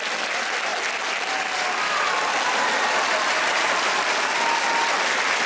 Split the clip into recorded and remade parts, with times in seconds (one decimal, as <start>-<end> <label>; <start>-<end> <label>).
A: 0.0-5.5 recorded